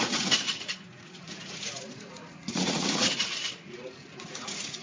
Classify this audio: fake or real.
fake